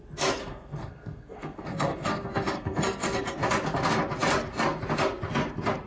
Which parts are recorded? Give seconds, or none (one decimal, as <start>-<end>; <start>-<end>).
0.0-0.4; 3.4-5.9